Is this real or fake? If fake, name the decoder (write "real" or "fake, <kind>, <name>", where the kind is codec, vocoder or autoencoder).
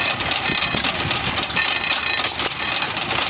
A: real